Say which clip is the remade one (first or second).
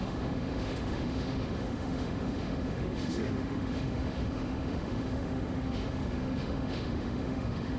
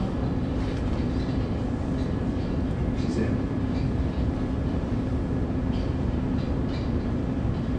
first